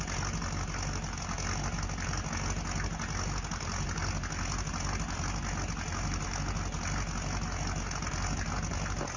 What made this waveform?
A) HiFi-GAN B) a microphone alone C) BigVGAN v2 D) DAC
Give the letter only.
B